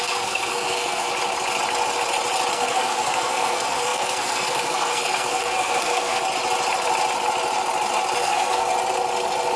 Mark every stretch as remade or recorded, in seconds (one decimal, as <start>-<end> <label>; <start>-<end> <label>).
0.0-1.1 remade; 1.1-2.5 recorded; 2.5-6.2 remade; 6.2-8.2 recorded; 8.2-8.7 remade; 8.7-9.6 recorded